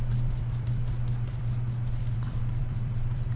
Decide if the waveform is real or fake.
fake